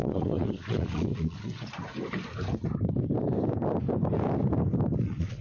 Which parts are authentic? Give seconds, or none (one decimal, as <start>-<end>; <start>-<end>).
1.8-5.0